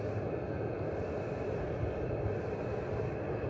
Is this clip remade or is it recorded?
recorded